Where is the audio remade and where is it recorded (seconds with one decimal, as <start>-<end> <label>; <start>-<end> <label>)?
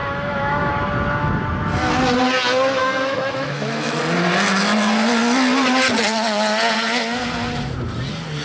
0.0-0.7 remade; 0.7-2.8 recorded; 2.8-4.0 remade; 4.0-8.4 recorded